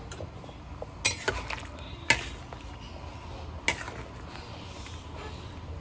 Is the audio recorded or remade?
recorded